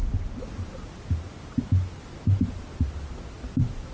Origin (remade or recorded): recorded